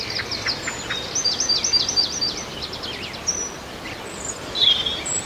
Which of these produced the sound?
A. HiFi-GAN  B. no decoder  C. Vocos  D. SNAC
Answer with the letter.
B